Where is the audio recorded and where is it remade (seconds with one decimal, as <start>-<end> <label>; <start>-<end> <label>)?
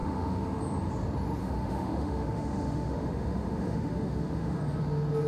0.0-0.6 remade; 0.6-1.4 recorded; 1.4-4.6 remade; 4.6-5.3 recorded